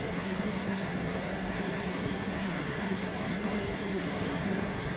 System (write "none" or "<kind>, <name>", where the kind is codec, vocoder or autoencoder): codec, SNAC